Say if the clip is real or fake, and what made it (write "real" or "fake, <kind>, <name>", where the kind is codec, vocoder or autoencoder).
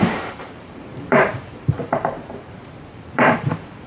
fake, vocoder, BigVGAN v2